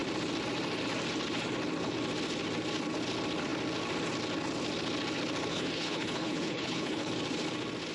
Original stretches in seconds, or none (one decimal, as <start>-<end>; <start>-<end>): 0.0-5.5; 7.1-7.9